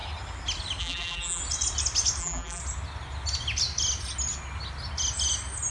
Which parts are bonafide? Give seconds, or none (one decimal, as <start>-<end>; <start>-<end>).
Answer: 0.0-0.8; 1.4-2.2; 2.6-5.7